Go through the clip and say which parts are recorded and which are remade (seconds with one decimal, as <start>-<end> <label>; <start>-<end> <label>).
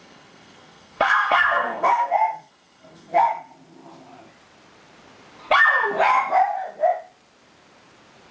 0.0-3.5 remade; 3.5-8.3 recorded